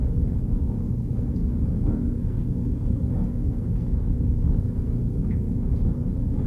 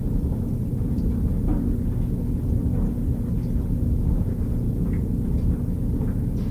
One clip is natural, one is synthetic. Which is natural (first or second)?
second